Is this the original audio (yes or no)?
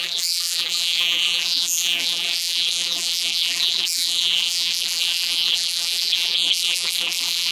no